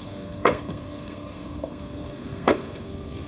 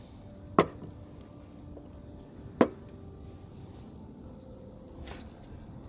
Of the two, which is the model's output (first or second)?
first